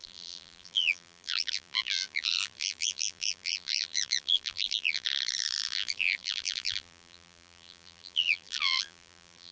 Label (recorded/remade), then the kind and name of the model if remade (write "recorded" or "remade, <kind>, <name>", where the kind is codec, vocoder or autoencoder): remade, vocoder, BigVGAN v2